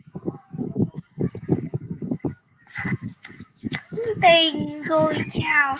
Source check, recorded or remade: remade